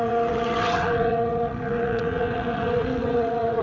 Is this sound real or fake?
fake